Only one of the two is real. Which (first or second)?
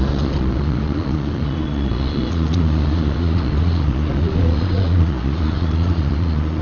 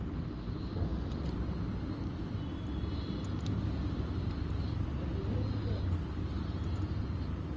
second